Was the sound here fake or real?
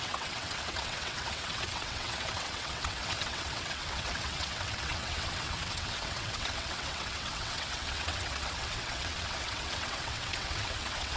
fake